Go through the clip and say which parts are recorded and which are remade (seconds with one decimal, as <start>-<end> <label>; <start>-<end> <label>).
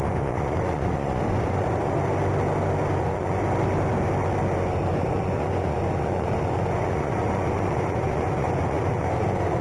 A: 0.0-2.0 remade; 2.0-3.0 recorded; 3.0-3.4 remade; 3.4-4.9 recorded; 4.9-9.6 remade